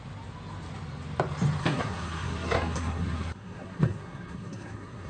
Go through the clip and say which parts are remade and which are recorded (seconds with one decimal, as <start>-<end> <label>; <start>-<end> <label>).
0.0-1.6 recorded; 1.6-5.1 remade